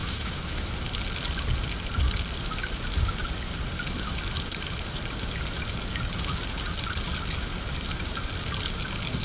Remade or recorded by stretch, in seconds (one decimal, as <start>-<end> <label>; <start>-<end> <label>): 0.0-0.7 remade; 0.7-9.2 recorded